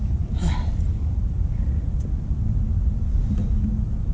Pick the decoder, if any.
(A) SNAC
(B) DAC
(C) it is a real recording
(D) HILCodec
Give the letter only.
C